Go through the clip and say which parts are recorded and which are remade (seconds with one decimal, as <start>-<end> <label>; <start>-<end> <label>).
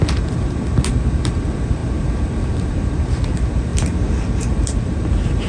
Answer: 0.0-1.8 recorded; 1.8-3.2 remade; 3.2-3.7 recorded; 3.7-5.1 remade; 5.1-5.5 recorded